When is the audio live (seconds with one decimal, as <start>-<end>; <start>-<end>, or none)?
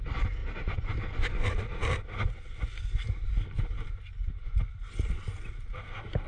0.0-0.4; 1.1-6.3